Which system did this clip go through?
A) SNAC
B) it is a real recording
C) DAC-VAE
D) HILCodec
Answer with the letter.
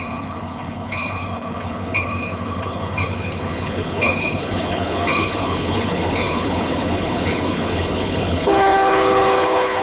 D